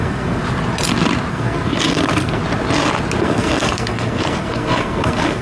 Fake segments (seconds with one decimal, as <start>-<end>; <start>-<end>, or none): 0.0-0.4; 1.3-2.4; 3.2-5.4